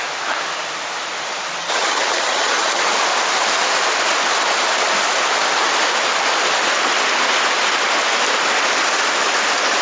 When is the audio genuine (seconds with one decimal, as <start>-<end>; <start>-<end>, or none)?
0.0-1.6; 2.8-9.8